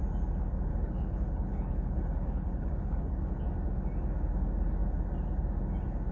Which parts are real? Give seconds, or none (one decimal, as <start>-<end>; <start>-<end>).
0.0-0.7; 3.4-6.1

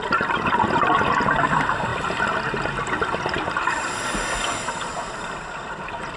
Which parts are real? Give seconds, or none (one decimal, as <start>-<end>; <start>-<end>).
0.0-6.2

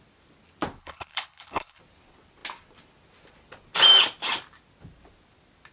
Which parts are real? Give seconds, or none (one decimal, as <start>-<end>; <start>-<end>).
0.0-0.8; 1.8-5.7